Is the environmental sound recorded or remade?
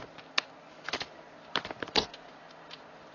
recorded